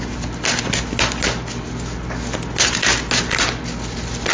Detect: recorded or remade recorded